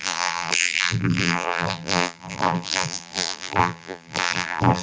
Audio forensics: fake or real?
fake